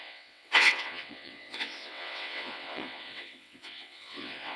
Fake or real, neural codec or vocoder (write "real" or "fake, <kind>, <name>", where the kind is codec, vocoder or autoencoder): fake, vocoder, WaveNeXt